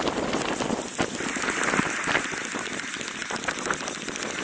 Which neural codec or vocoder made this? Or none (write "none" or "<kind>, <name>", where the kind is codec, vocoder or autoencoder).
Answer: none